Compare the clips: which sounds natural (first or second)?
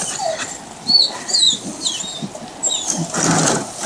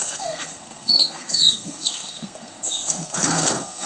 first